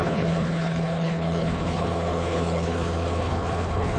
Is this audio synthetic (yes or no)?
yes